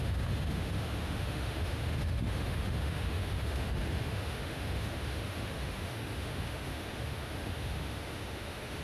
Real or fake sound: fake